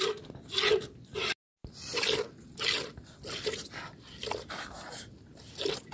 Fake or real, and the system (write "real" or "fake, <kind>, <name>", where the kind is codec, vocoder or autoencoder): real